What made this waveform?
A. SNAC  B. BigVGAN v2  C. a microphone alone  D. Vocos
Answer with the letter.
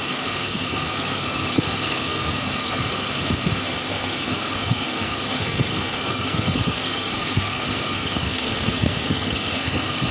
A